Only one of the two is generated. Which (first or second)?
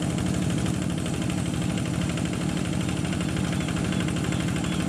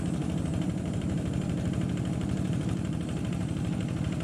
second